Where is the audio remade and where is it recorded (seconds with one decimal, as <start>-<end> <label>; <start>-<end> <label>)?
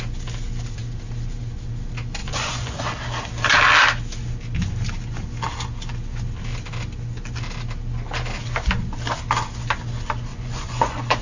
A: 0.0-2.2 recorded; 2.2-2.8 remade; 2.8-10.3 recorded; 10.3-11.2 remade